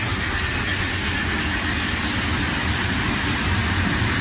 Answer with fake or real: real